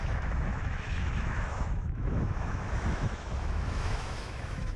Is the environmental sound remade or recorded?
remade